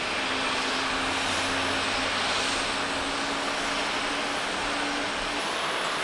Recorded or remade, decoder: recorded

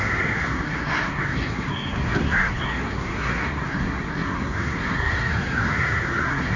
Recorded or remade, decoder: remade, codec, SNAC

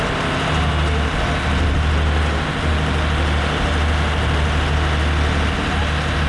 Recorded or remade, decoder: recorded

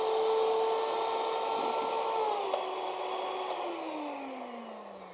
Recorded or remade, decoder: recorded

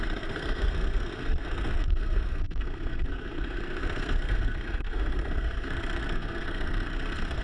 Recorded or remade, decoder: remade, codec, SNAC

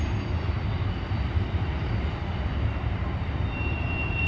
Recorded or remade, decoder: recorded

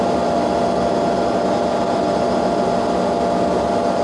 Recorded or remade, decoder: recorded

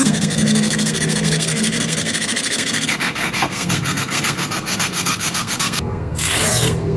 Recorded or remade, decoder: remade, codec, SNAC